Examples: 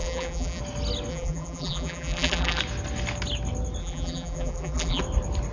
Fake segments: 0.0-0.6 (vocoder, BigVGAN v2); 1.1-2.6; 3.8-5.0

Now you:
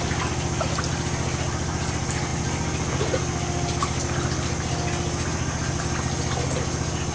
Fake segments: none

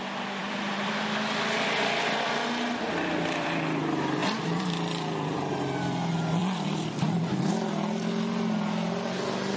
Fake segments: 0.4-0.9 (vocoder, BigVGAN v2); 4.2-5.6; 6.4-7.5

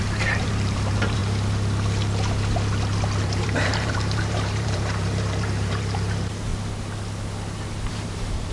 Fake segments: 0.0-1.2 (vocoder, BigVGAN v2); 3.2-6.5; 7.9-8.5

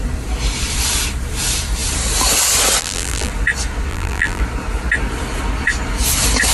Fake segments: 2.8-3.3 (vocoder, BigVGAN v2); 3.9-4.4

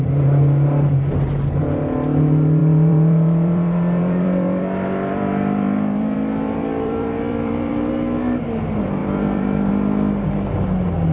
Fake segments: 2.6-7.9 (vocoder, BigVGAN v2); 9.0-9.7

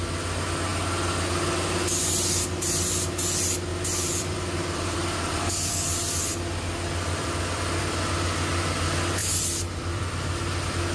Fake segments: 3.7-7.8 (vocoder, BigVGAN v2); 9.2-9.8

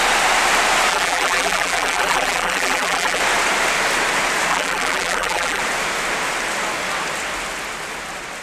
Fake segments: 0.9-3.2 (vocoder, BigVGAN v2); 4.5-5.6